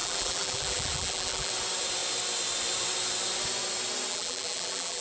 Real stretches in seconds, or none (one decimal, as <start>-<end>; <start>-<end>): 1.5-4.1

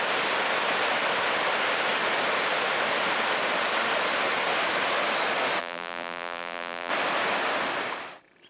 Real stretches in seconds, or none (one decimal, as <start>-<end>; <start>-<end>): 0.0-5.6; 6.9-8.5